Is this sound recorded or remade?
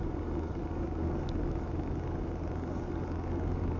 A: remade